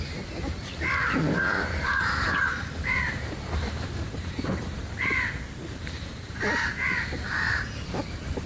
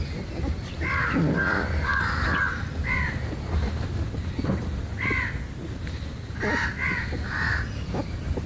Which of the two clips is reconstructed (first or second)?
first